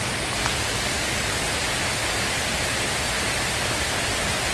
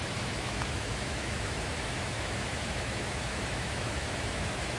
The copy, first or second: second